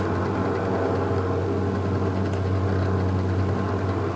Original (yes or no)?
yes